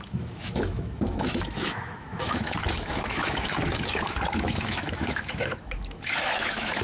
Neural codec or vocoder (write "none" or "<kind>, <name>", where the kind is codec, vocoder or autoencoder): autoencoder, DAC-VAE